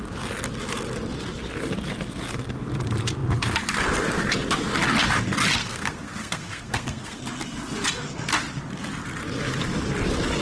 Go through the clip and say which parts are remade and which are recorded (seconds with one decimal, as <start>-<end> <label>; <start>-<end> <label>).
0.0-5.6 recorded; 5.6-7.2 remade; 7.2-10.4 recorded

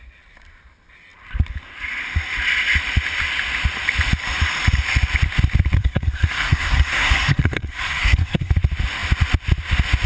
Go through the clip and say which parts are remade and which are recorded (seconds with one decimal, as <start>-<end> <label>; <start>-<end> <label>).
0.0-5.8 recorded; 5.8-8.5 remade; 8.5-10.1 recorded

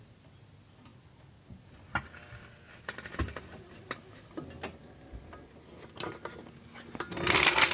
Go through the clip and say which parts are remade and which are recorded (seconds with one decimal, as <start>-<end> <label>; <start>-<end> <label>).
0.0-7.7 recorded

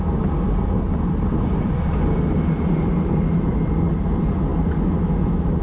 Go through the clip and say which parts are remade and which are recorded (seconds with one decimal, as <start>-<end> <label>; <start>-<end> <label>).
0.0-5.6 recorded

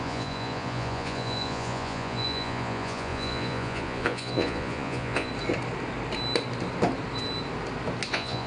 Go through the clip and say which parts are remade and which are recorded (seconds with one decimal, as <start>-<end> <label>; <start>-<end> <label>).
0.0-5.3 remade; 5.3-8.1 recorded; 8.1-8.5 remade

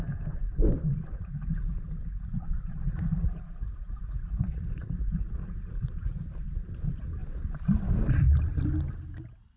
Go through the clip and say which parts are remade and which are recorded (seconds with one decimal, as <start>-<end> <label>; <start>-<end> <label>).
0.0-2.0 recorded; 2.0-6.2 remade; 6.2-9.6 recorded

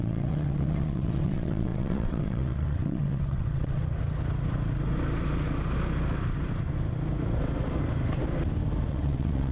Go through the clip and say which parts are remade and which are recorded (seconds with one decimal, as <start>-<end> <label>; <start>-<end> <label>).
0.0-3.8 remade; 3.8-8.9 recorded; 8.9-9.5 remade